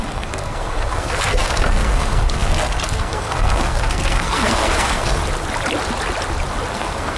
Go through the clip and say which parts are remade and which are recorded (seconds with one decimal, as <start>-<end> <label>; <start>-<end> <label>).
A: 0.0-5.2 remade; 5.2-6.7 recorded; 6.7-7.2 remade